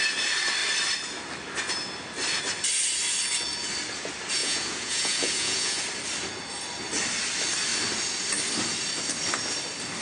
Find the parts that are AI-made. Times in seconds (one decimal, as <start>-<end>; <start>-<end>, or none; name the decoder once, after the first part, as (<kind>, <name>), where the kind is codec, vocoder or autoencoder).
4.4-5.8 (vocoder, Vocos)